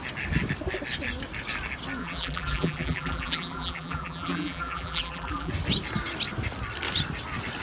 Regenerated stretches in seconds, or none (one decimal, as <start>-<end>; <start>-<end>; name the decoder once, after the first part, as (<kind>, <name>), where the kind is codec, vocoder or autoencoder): 2.0-5.5 (vocoder, BigVGAN v2)